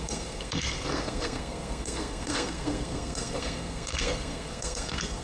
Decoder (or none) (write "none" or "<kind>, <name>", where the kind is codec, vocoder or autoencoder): codec, SNAC